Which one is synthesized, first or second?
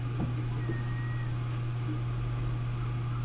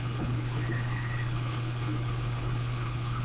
second